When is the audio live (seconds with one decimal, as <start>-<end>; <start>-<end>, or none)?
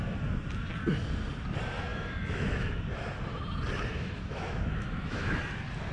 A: 0.0-1.9; 2.8-3.9; 5.4-5.9